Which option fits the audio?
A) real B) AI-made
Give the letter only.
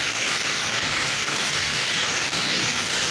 B